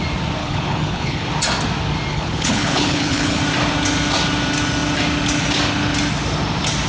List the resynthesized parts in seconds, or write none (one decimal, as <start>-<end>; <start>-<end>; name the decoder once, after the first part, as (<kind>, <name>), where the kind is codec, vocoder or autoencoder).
0.4-1.3 (codec, HILCodec); 2.1-3.4